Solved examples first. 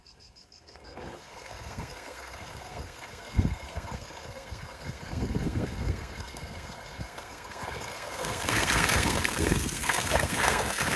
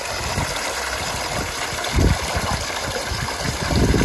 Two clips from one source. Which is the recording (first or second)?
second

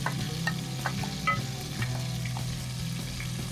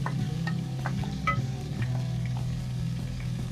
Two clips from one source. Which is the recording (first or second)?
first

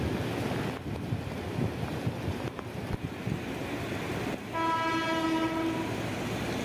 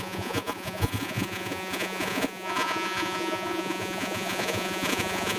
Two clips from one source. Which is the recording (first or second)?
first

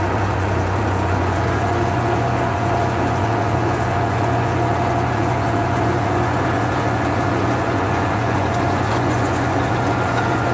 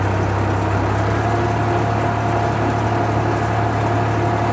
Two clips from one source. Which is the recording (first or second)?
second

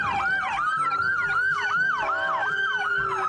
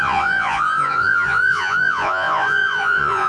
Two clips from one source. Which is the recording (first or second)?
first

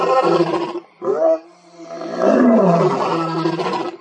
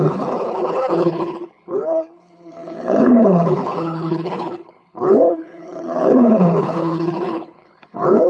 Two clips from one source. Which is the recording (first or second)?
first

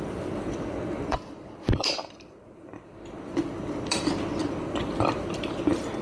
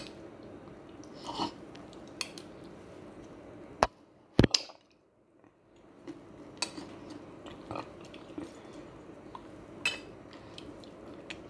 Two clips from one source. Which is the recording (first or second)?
second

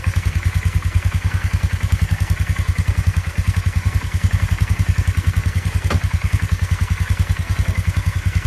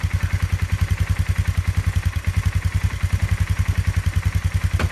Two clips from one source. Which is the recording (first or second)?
second